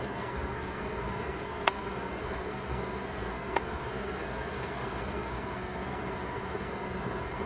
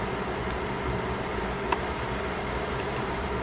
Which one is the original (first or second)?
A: second